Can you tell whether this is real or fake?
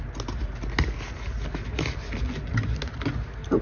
real